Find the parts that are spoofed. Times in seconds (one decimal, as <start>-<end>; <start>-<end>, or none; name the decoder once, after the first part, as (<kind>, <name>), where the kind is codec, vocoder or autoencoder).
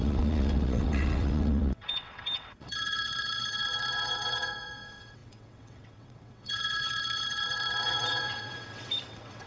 0.0-9.5 (vocoder, WaveNeXt)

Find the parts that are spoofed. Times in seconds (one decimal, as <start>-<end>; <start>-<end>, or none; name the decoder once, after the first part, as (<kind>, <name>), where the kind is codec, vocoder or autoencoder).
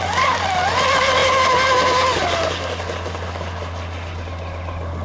none